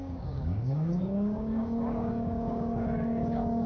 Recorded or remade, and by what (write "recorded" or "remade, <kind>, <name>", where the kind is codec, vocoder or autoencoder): remade, codec, DAC